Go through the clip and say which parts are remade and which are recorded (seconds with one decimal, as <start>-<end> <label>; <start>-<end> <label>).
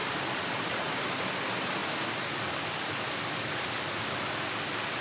0.0-1.1 remade; 1.1-5.0 recorded